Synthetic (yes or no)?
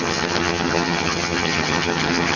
yes